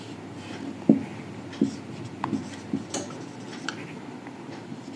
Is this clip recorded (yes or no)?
yes